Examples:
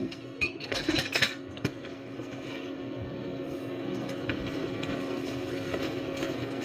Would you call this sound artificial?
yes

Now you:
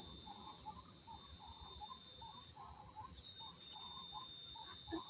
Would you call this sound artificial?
yes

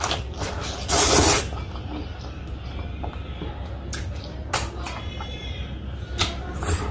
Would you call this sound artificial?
no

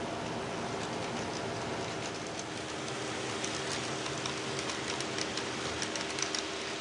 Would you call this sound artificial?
no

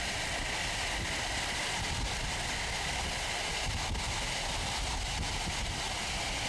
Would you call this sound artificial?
no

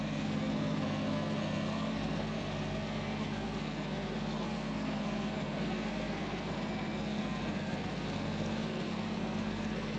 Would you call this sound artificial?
yes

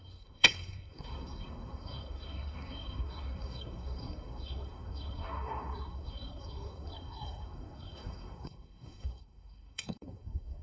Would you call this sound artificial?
yes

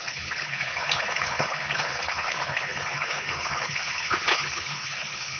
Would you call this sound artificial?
yes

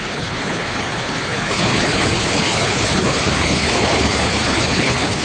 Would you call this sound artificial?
yes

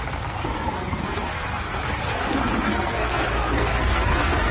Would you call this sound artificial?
yes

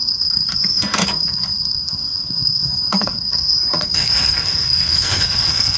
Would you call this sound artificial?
yes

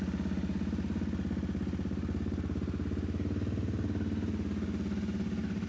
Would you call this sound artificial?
no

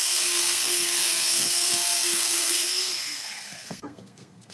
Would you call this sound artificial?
yes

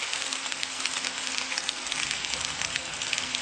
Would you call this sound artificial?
yes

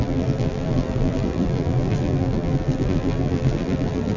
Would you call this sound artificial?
yes